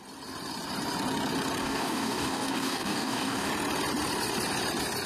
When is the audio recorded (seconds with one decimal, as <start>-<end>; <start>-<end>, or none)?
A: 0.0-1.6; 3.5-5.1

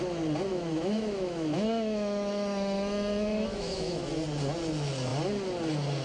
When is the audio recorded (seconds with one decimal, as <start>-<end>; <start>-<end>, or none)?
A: 0.0-0.5; 4.1-6.0

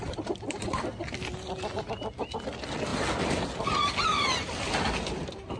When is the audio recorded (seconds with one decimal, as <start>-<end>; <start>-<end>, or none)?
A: 0.0-5.6

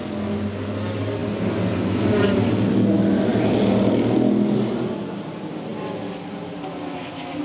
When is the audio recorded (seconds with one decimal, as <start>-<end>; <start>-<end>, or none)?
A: 0.0-7.4